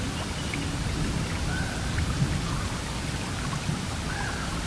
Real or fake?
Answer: real